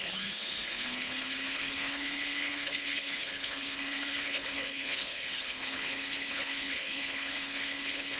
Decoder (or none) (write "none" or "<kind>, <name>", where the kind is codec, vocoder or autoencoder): codec, HILCodec